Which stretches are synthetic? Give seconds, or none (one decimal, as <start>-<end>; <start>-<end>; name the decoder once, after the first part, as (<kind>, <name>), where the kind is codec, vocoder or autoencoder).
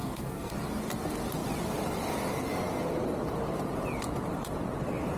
0.0-0.5 (codec, SNAC)